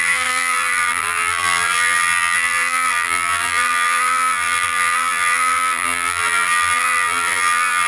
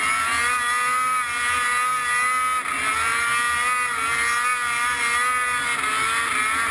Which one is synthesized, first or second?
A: first